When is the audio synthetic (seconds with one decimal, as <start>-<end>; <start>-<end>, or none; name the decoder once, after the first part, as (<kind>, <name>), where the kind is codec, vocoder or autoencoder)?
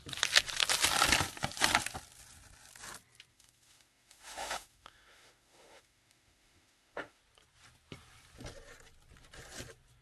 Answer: 3.3-7.2 (autoencoder, DAC-VAE)